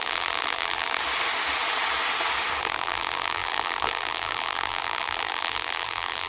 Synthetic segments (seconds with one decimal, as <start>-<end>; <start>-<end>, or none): 0.0-1.0; 2.6-6.3